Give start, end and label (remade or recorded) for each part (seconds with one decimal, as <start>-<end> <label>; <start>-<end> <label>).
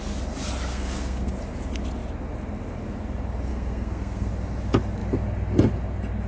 0.0-0.7 recorded; 0.7-1.3 remade; 1.3-3.5 recorded; 3.5-4.3 remade; 4.3-6.3 recorded